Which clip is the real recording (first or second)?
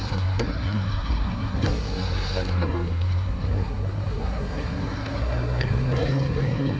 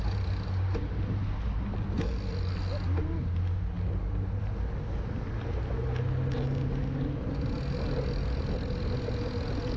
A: second